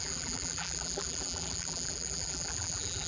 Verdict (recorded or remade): remade